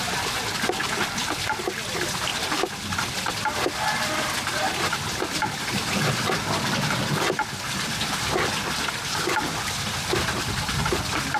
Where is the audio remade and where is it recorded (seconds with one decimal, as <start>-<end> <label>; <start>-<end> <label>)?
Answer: 0.0-2.3 remade; 2.3-3.3 recorded; 3.3-11.4 remade